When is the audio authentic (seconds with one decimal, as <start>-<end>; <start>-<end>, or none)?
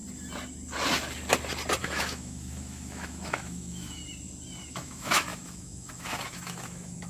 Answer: 0.0-1.8; 4.0-4.7